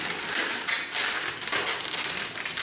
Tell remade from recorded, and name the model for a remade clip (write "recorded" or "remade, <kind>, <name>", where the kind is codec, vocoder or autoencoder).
recorded